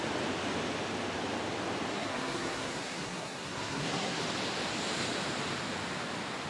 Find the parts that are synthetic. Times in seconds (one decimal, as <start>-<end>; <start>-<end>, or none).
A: 1.9-4.2